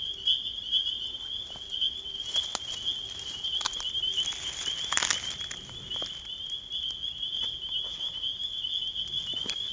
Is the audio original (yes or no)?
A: yes